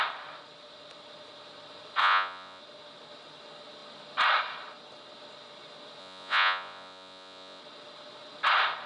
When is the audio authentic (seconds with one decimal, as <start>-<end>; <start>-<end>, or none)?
0.0-2.0; 2.6-6.0; 7.6-8.9